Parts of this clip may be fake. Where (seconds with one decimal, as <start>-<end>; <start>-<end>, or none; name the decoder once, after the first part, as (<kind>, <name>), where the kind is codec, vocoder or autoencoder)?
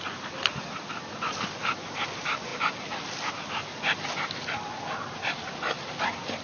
none